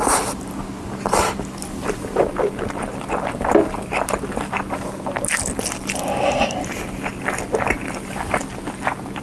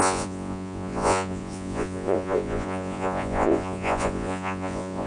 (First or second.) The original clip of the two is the first